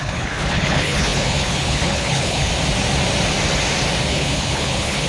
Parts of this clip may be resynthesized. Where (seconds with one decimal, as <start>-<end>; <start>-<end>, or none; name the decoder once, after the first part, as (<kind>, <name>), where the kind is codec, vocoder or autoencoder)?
0.0-2.5 (codec, HILCodec); 4.1-5.1